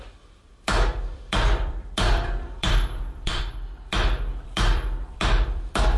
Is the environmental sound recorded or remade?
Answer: remade